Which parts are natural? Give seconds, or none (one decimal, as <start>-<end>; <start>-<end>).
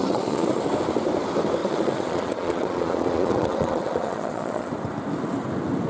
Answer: 0.6-1.6; 4.7-5.9